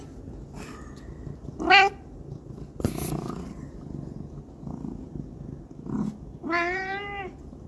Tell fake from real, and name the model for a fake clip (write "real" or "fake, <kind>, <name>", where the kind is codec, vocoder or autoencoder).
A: real